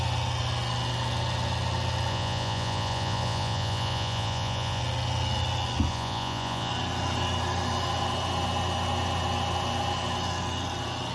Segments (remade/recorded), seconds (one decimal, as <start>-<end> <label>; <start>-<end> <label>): 0.0-2.1 recorded; 2.1-4.8 remade; 4.8-5.9 recorded; 5.9-6.7 remade; 6.7-11.1 recorded